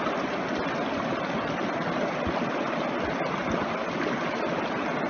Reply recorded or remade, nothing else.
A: recorded